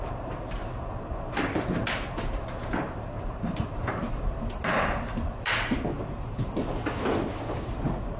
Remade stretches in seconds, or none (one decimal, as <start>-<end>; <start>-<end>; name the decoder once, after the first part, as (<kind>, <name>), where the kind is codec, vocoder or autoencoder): none